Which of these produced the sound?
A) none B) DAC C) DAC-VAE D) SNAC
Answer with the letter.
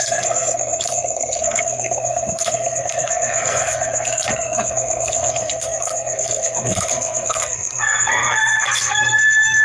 D